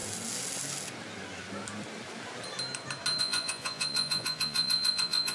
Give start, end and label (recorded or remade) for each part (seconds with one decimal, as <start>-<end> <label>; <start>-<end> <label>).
0.0-3.2 recorded; 3.2-5.3 remade